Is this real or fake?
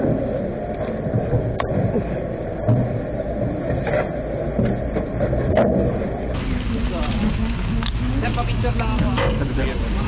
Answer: real